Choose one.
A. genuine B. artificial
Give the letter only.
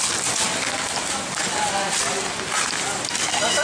A